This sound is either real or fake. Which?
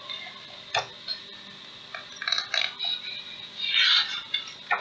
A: real